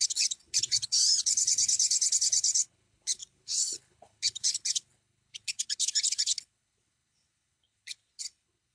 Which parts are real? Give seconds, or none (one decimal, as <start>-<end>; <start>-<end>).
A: none